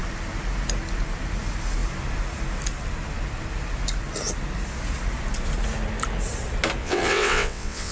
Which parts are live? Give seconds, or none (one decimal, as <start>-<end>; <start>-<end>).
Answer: 0.0-6.8